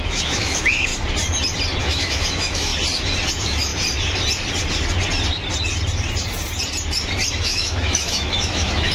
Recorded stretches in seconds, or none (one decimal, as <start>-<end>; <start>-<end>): 0.9-1.8; 2.7-3.3; 3.7-7.3